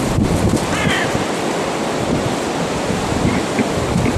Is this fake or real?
real